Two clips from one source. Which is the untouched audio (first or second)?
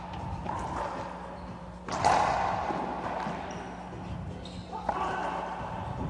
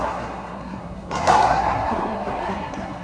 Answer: first